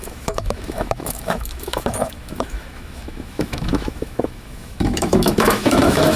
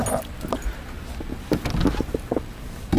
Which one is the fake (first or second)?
first